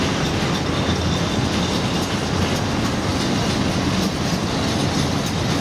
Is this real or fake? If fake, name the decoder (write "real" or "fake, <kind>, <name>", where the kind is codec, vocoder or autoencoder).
real